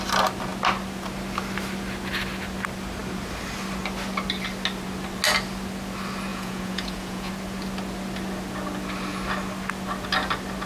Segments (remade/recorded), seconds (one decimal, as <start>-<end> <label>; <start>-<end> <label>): 0.0-6.3 recorded; 6.3-7.3 remade; 7.3-10.7 recorded